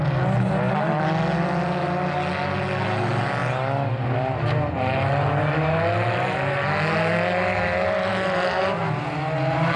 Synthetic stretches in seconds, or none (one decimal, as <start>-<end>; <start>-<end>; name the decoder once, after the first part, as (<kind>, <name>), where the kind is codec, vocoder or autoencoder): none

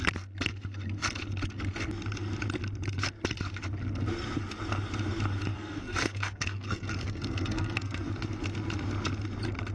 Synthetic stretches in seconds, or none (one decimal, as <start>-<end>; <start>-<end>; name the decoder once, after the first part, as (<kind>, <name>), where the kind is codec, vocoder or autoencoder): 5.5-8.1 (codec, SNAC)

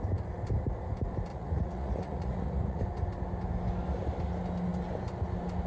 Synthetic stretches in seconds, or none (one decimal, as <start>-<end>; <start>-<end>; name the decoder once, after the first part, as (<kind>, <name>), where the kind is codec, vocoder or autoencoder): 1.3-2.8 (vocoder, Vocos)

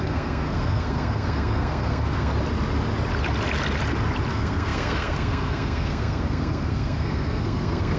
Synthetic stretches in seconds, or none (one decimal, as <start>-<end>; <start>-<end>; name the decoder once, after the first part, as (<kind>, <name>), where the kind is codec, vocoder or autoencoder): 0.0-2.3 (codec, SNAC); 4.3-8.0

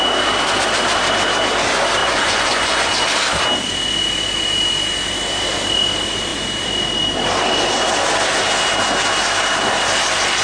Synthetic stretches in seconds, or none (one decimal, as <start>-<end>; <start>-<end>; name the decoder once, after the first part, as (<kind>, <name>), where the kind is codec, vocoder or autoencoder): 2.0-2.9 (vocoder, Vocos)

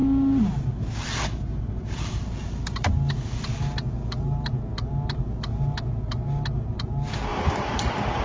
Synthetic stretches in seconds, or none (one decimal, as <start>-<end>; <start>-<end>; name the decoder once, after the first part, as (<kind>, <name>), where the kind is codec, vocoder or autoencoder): 7.3-8.2 (vocoder, BigVGAN v2)

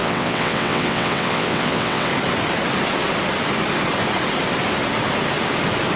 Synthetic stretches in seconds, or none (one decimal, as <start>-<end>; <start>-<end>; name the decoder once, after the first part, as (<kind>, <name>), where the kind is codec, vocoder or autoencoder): 0.0-2.1 (vocoder, WaveNeXt)